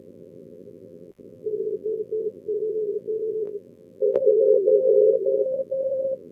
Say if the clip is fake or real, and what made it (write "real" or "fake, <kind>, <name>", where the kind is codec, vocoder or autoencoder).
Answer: fake, vocoder, BigVGAN v2